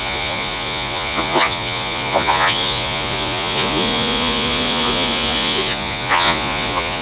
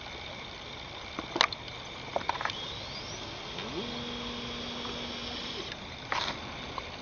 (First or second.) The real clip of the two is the second